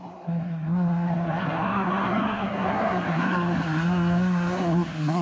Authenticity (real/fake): fake